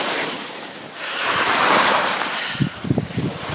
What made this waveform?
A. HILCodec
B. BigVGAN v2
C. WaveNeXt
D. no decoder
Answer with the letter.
B